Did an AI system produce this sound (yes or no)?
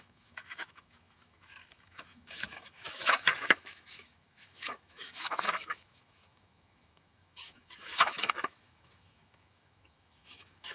yes